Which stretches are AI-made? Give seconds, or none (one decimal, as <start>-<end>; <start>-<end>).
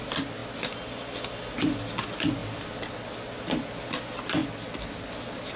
none